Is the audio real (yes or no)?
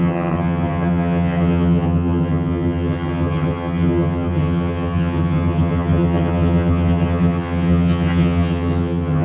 no